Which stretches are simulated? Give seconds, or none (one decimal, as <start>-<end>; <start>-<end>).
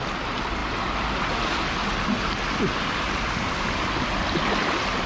none